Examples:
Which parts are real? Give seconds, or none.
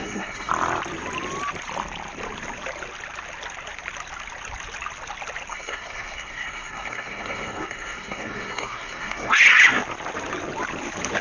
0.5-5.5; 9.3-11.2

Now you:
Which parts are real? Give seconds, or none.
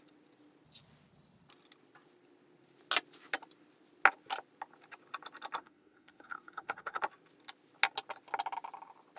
0.0-5.6; 7.0-9.2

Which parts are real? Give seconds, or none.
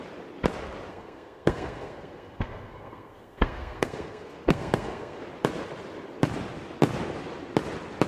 0.0-0.9; 5.2-8.1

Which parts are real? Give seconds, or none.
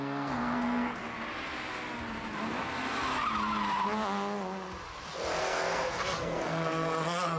1.0-5.4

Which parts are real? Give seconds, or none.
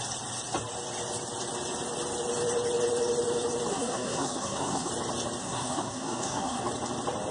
0.0-3.7; 4.9-5.4; 6.6-7.3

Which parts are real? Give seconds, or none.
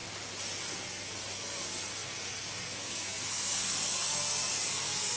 0.0-0.6